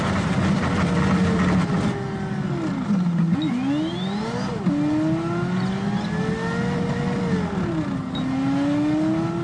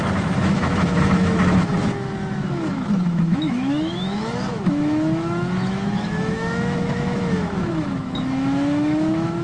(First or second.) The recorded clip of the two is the first